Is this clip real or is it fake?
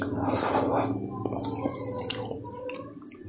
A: real